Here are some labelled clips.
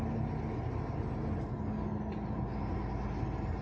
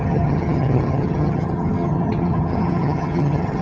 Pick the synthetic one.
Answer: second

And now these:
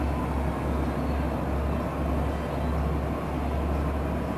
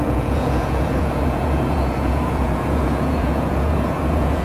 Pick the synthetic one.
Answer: second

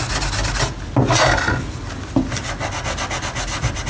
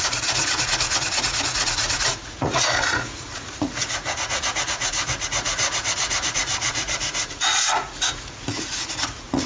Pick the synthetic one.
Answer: second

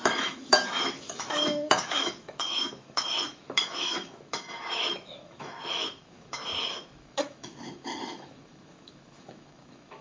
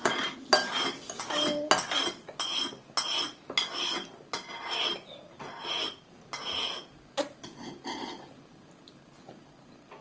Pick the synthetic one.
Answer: first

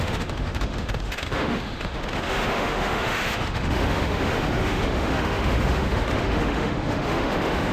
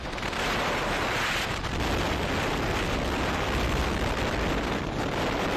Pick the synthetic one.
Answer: first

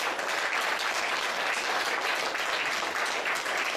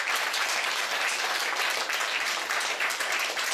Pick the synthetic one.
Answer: second